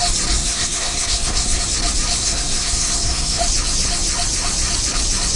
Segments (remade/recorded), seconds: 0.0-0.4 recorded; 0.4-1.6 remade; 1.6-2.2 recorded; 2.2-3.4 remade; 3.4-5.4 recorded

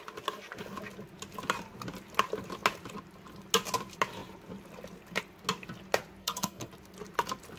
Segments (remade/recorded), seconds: 0.0-6.2 recorded; 6.2-6.7 remade; 6.7-7.6 recorded

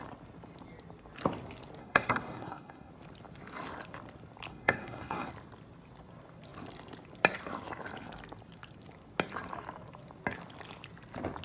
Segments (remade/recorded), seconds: 0.0-1.8 recorded; 1.8-2.9 remade; 2.9-4.5 recorded; 4.5-5.3 remade; 5.3-11.4 recorded

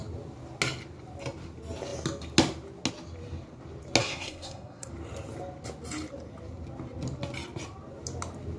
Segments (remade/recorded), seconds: 0.0-4.0 recorded; 4.0-4.9 remade; 4.9-8.6 recorded